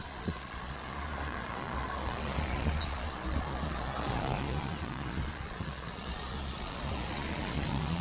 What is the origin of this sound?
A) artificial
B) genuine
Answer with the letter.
A